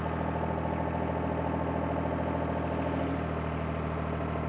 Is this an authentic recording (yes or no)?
yes